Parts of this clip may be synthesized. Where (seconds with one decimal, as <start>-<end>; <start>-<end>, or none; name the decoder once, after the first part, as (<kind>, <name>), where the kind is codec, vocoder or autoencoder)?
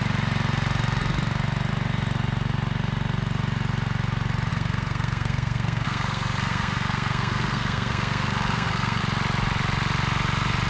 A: 4.5-9.0 (codec, SNAC)